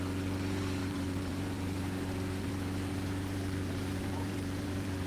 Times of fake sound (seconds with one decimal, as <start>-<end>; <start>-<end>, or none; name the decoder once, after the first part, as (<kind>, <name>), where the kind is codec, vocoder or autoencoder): 0.8-2.5 (vocoder, BigVGAN v2); 2.9-5.1